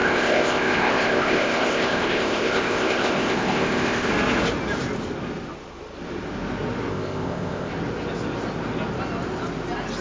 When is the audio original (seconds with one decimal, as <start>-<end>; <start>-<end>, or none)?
4.1-6.9; 7.7-10.0